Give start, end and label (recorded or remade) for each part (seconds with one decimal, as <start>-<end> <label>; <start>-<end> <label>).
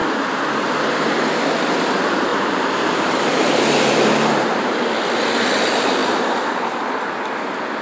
0.0-2.3 recorded; 2.3-4.7 remade; 4.7-6.0 recorded; 6.0-7.0 remade; 7.0-7.8 recorded